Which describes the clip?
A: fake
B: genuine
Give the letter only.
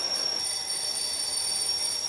B